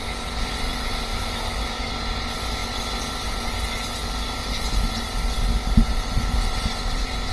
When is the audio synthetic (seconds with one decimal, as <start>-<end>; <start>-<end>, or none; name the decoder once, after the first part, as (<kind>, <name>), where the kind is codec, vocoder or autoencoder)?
1.1-1.9 (autoencoder, DAC-VAE)

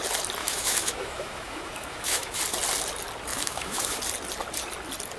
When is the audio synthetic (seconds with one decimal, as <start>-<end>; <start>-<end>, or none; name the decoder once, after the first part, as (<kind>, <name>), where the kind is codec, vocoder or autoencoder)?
0.4-2.4 (autoencoder, DAC-VAE); 3.3-4.0

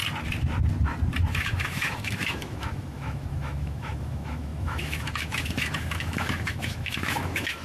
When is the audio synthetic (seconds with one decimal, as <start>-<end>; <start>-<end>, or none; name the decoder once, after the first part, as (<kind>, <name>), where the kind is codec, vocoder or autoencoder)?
1.3-7.6 (autoencoder, DAC-VAE)